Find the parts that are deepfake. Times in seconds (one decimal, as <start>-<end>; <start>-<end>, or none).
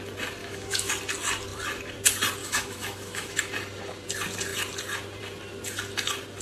0.4-0.9; 2.4-3.5